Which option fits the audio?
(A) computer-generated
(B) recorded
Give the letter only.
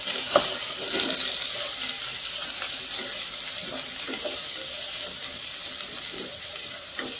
B